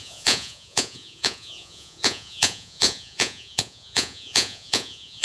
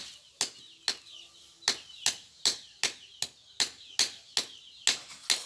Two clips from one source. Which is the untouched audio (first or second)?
second